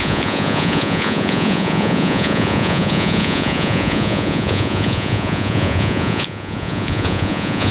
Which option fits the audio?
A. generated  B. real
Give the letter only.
A